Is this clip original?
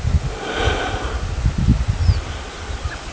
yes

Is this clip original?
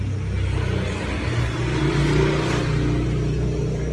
yes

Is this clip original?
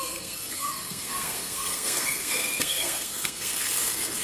no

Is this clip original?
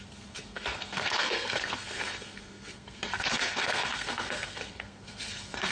no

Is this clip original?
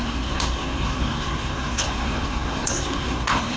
no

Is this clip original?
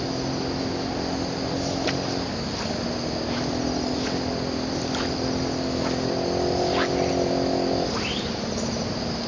yes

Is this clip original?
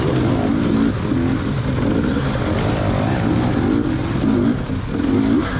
yes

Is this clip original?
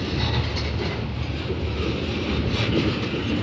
yes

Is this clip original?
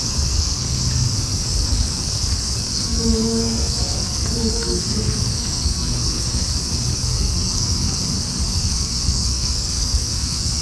no